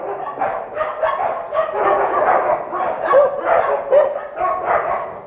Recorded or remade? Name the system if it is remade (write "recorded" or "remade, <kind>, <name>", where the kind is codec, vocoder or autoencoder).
recorded